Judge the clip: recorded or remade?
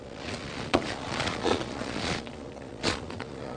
remade